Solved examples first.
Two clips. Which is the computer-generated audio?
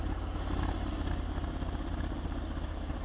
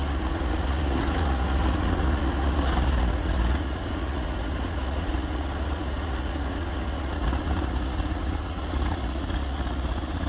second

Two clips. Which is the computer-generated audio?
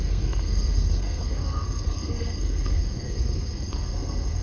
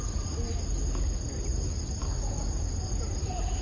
first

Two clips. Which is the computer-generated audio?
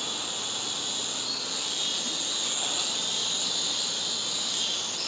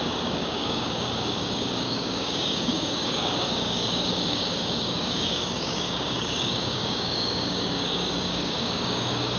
second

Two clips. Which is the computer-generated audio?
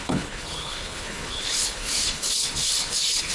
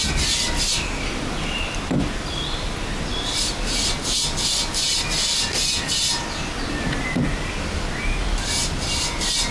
first